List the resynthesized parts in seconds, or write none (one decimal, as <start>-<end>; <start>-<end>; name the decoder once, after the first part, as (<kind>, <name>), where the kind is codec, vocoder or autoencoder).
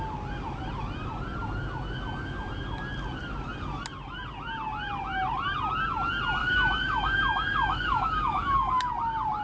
6.4-8.9 (autoencoder, DAC-VAE)